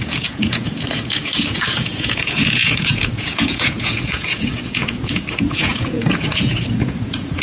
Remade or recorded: remade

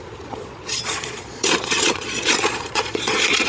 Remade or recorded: remade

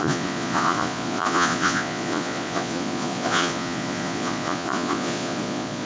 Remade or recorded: remade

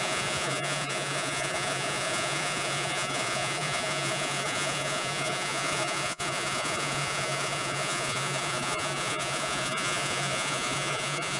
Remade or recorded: remade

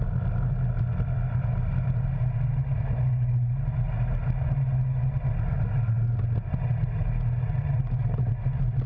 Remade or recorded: recorded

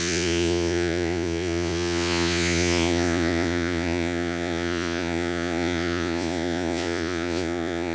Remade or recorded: remade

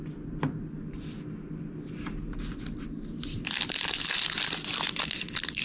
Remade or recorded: recorded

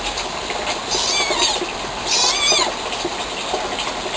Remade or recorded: recorded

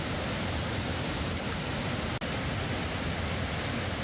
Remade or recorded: recorded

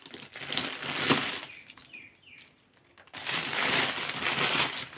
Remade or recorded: recorded